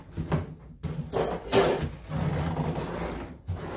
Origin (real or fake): real